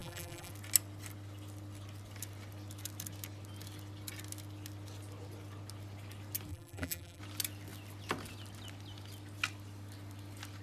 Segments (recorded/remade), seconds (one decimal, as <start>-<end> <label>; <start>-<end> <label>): 0.0-0.5 remade; 0.5-6.5 recorded; 6.5-7.2 remade; 7.2-10.6 recorded